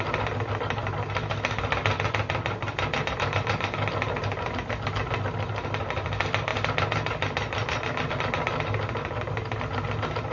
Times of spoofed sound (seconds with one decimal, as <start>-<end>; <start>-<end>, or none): none